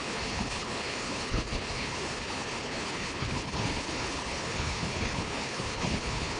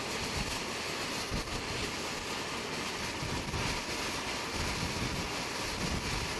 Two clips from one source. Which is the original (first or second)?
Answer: second